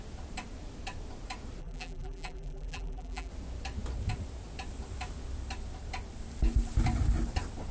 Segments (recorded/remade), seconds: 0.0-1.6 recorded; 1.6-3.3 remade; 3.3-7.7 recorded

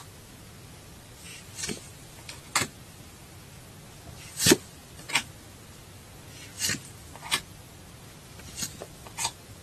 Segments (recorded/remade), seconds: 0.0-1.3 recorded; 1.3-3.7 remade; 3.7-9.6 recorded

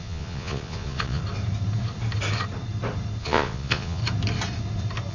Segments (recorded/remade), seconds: 0.0-1.2 remade; 1.2-3.2 recorded; 3.2-4.0 remade; 4.0-5.1 recorded